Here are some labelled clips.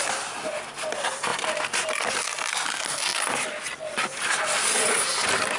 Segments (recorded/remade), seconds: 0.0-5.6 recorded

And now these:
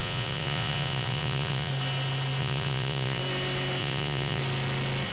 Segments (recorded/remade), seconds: 0.0-1.7 remade; 1.7-2.4 recorded; 2.4-3.2 remade; 3.2-3.8 recorded; 3.8-4.4 remade; 4.4-5.1 recorded

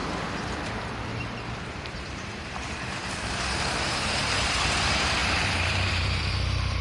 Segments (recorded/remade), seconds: 0.0-0.5 recorded; 0.5-6.8 remade